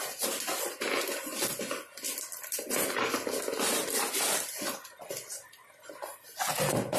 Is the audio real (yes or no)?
yes